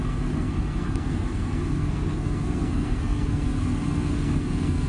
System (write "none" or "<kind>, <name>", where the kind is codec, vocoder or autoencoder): codec, SNAC